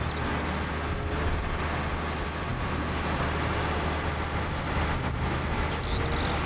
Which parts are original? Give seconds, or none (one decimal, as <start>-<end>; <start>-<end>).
0.0-6.5